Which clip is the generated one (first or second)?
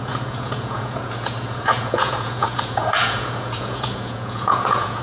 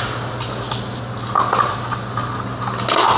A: first